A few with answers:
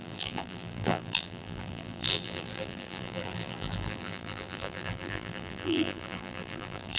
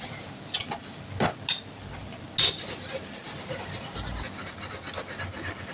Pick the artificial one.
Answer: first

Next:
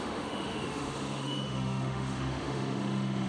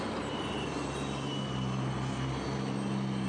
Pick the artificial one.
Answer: first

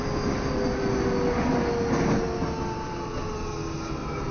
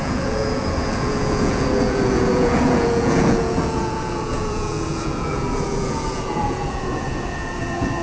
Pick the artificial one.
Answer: second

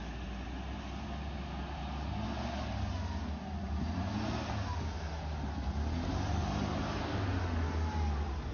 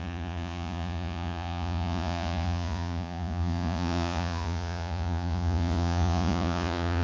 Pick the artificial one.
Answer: second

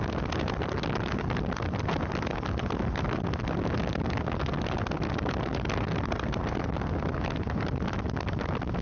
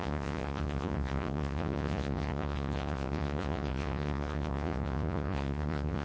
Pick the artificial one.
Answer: second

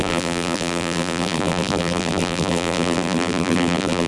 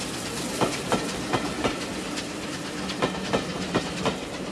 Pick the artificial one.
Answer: first